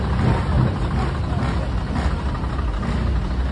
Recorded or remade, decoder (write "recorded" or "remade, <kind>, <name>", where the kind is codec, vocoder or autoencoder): recorded